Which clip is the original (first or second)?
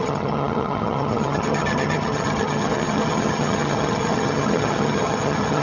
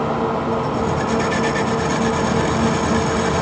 second